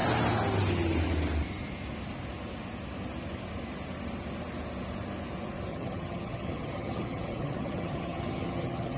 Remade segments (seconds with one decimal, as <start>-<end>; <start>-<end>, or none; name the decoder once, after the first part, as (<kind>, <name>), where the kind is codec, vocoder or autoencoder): 5.7-9.0 (vocoder, HiFi-GAN)